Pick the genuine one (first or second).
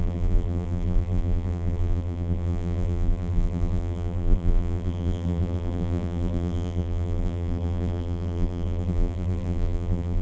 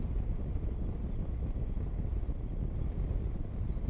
second